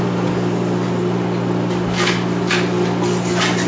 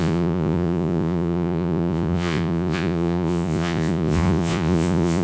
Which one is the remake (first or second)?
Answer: second